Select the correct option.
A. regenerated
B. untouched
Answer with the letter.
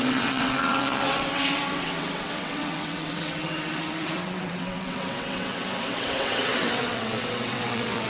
A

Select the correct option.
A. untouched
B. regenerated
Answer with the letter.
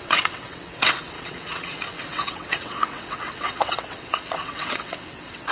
B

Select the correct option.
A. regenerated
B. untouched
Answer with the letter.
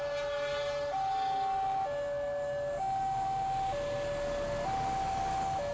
B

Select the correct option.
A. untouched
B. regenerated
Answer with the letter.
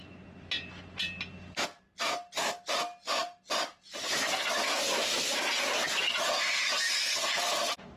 A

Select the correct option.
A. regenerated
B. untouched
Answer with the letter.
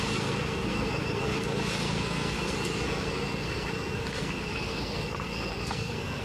A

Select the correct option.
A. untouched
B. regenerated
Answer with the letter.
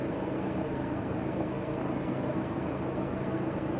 B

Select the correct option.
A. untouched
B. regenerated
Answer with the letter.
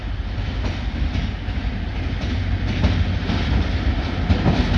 A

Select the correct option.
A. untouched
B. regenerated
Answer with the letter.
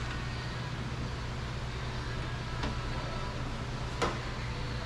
A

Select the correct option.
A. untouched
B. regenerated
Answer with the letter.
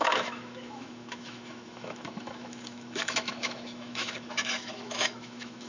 B